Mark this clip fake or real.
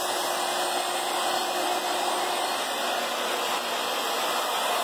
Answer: real